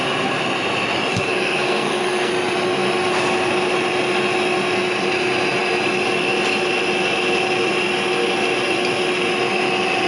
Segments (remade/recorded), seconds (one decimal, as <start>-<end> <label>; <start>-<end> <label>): 0.0-1.1 recorded; 1.1-2.3 remade; 2.3-10.1 recorded